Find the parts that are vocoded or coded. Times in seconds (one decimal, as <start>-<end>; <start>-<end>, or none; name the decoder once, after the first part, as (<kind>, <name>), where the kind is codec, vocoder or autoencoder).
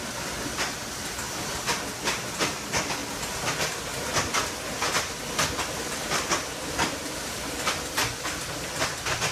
none